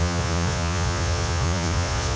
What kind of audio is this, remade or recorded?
remade